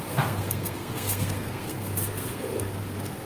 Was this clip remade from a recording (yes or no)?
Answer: yes